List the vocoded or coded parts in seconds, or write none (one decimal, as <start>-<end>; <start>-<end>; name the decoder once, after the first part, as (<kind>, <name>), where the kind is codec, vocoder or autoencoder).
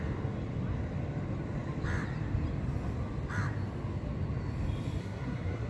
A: 5.0-5.7 (codec, SNAC)